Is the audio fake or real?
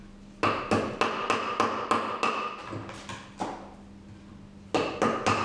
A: real